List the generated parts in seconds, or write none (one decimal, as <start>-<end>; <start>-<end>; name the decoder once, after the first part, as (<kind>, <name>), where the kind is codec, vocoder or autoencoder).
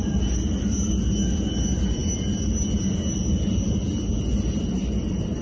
none